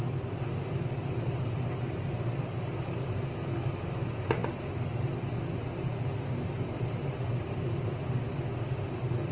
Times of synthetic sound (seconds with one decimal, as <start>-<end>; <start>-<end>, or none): none